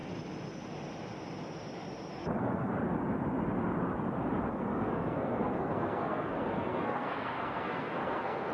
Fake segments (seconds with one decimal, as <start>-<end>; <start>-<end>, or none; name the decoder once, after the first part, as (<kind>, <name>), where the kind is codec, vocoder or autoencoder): 2.2-2.7 (codec, SNAC); 4.5-8.5

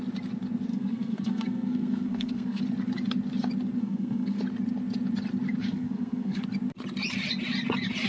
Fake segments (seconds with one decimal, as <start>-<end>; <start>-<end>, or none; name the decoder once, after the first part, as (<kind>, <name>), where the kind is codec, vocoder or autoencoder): 0.7-2.6 (codec, SNAC); 3.8-4.4; 5.6-6.4

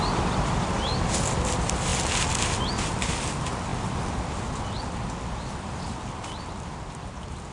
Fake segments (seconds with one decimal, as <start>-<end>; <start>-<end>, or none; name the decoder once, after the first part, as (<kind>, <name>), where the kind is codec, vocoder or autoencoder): none